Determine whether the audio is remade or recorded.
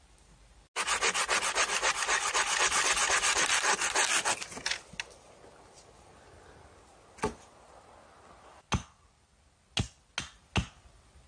recorded